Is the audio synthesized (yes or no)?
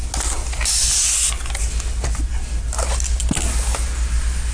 no